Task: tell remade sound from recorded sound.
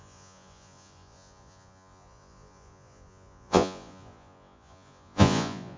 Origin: remade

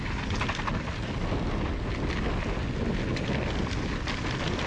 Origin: recorded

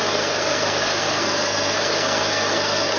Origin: remade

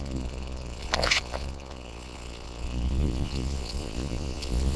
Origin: remade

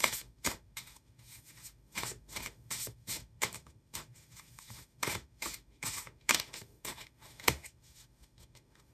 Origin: remade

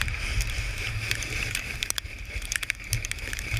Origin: remade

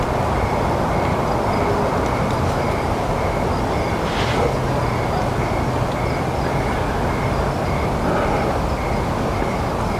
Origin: recorded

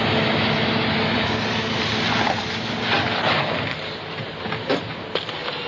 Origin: recorded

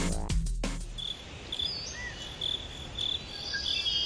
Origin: recorded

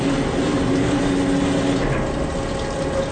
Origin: recorded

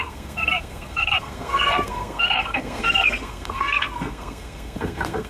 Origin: remade